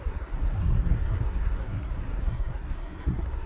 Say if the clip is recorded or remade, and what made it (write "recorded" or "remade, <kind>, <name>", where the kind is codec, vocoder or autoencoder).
remade, codec, SNAC